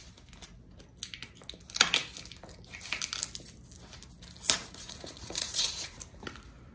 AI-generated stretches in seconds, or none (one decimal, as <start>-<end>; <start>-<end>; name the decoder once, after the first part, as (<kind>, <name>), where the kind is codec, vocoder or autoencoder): 4.6-6.0 (vocoder, Vocos)